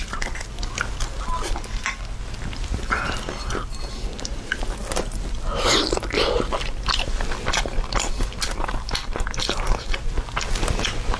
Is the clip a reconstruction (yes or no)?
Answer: no